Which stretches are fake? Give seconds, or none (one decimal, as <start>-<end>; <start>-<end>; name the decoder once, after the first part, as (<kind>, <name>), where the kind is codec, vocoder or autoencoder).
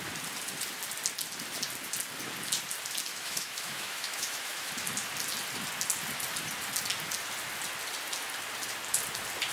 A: 3.1-4.7 (autoencoder, DAC-VAE)